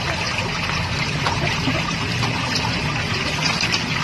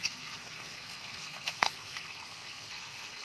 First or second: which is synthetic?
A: second